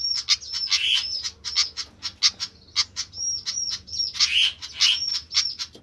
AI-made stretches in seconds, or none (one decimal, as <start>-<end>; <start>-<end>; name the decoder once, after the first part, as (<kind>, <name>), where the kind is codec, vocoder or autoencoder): none

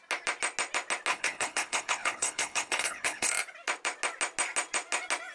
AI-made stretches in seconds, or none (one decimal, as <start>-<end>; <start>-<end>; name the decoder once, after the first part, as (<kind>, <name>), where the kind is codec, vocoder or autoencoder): 1.1-3.3 (codec, HILCodec)

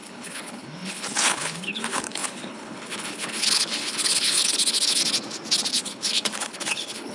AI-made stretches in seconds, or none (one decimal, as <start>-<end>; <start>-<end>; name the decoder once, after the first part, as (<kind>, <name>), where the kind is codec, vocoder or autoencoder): 0.0-5.0 (codec, HILCodec); 5.7-7.1

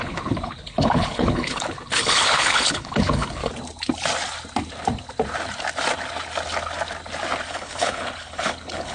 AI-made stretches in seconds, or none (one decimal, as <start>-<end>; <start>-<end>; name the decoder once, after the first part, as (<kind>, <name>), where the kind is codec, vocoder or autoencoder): 0.0-3.4 (codec, HILCodec); 7.5-8.9

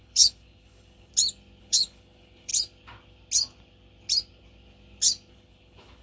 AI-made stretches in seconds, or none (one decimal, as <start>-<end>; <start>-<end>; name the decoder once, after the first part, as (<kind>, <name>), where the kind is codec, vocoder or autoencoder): 0.0-1.1 (codec, HILCodec); 1.6-2.5; 5.3-6.0